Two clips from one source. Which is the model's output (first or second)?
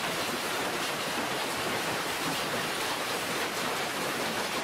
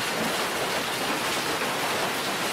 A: first